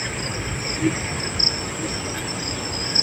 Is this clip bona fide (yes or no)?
yes